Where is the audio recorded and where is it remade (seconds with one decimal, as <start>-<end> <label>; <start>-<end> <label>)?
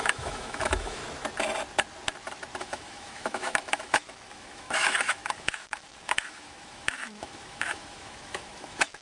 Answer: 0.0-1.0 remade; 1.0-2.6 recorded; 2.6-9.0 remade